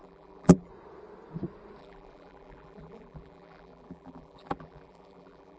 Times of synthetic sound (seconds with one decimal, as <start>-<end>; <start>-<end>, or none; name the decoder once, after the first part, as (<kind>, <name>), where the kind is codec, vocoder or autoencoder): 0.0-0.7 (vocoder, BigVGAN v2); 1.8-5.6